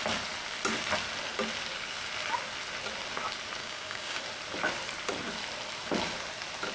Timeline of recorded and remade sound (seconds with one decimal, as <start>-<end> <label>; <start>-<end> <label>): 0.0-3.6 recorded; 3.6-4.2 remade; 4.2-6.7 recorded